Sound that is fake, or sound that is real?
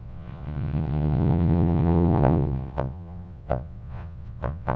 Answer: fake